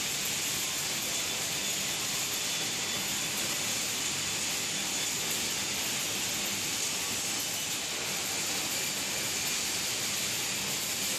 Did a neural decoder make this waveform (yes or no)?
no